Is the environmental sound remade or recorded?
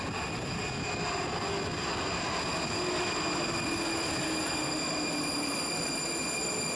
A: recorded